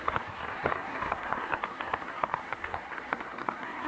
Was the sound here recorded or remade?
remade